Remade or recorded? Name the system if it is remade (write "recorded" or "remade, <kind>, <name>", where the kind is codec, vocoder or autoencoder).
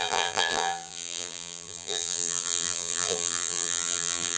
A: remade, vocoder, BigVGAN v2